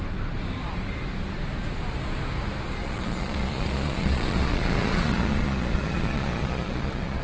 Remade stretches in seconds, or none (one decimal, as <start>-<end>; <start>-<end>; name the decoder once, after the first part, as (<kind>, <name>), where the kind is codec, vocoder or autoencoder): 2.8-7.2 (vocoder, Vocos)